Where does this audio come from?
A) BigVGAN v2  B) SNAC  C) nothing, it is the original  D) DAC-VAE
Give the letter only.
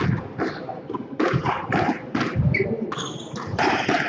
A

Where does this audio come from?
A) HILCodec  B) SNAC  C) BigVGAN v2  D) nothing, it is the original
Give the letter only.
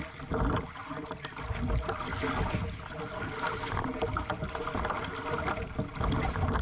D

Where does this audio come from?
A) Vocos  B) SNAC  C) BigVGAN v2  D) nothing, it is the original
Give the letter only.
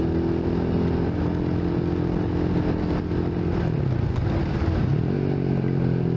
D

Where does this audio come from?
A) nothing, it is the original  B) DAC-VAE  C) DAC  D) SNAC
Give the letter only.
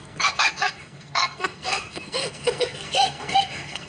D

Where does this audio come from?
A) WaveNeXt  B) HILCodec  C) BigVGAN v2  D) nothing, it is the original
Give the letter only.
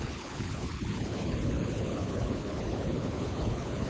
B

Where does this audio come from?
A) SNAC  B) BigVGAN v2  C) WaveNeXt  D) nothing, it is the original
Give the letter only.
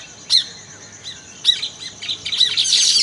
D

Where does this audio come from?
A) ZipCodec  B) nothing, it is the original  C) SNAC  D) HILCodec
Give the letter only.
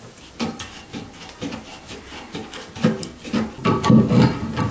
B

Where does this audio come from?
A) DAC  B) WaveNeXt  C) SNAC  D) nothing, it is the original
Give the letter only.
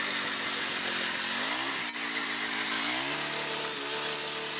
D